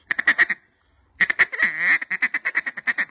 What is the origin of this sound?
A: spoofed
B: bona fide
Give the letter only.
B